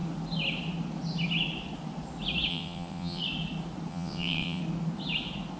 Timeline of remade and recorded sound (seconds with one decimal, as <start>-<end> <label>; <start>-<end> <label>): 0.0-2.5 recorded; 2.5-3.2 remade; 3.2-3.9 recorded; 3.9-4.6 remade; 4.6-5.6 recorded